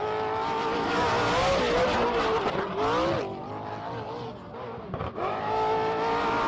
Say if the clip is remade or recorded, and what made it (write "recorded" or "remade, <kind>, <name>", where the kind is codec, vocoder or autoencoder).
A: recorded